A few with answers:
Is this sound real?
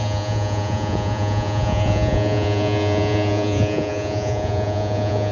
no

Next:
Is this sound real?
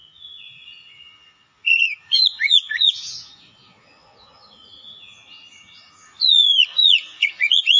no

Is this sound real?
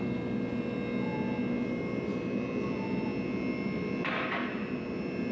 yes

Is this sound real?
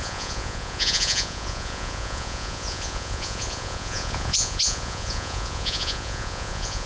no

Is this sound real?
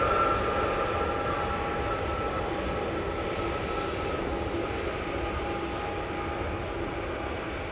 yes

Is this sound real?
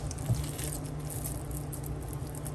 yes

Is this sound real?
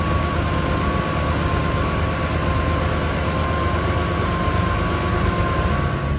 yes